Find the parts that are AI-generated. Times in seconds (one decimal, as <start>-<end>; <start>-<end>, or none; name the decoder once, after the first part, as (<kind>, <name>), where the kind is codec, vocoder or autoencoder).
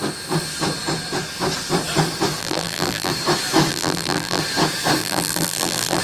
2.4-3.1 (vocoder, BigVGAN v2); 3.7-4.4; 5.0-6.0